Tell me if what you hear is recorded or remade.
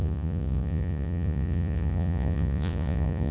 remade